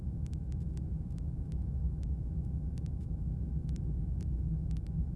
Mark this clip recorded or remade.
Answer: remade